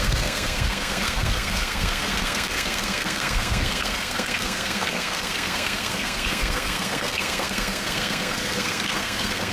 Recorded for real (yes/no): no